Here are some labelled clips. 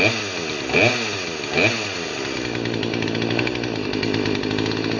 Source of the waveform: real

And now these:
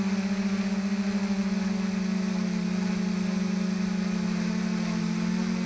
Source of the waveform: real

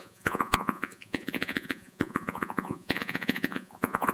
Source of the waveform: fake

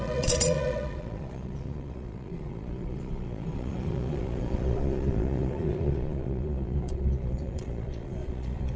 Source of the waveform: fake